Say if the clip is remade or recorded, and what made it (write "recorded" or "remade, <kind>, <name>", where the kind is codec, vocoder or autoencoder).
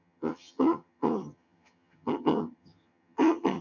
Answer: remade, vocoder, HiFi-GAN